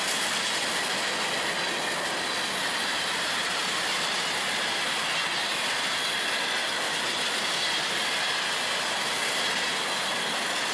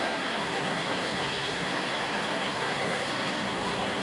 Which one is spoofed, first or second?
second